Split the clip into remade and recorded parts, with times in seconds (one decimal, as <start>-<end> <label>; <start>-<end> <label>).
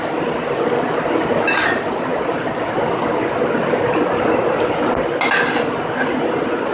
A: 0.0-6.7 recorded